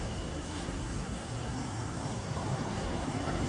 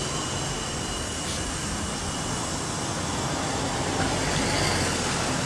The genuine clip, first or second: second